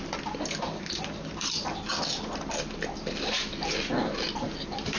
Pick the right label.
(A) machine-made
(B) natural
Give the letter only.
B